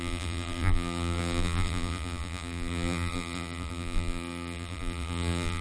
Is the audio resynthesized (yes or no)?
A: yes